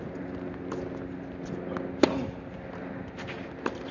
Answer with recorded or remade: recorded